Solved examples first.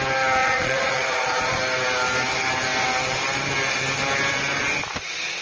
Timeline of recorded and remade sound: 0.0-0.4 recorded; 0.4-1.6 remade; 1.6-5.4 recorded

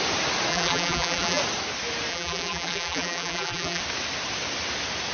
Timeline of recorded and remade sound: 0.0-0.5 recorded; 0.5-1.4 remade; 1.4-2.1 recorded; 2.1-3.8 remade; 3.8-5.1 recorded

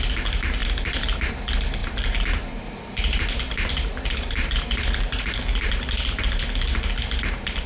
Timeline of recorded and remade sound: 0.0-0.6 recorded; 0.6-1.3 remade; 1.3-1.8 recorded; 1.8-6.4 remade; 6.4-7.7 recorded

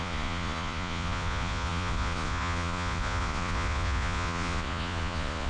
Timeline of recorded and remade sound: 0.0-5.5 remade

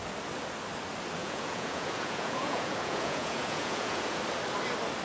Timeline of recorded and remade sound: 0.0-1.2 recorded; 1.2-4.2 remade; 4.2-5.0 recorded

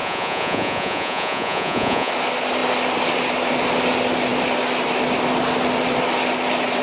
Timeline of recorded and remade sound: 0.0-2.1 remade; 2.1-6.8 recorded

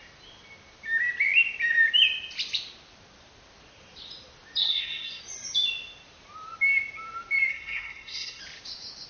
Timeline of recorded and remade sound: 0.0-4.6 recorded; 4.6-5.2 remade; 5.2-7.5 recorded; 7.5-8.4 remade; 8.4-9.1 recorded